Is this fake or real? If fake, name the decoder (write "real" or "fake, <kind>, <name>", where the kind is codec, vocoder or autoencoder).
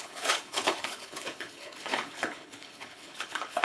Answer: fake, codec, HILCodec